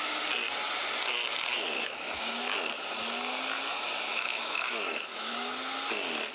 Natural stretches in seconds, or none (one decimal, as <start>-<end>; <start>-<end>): 0.0-1.5; 2.2-4.1; 5.3-6.3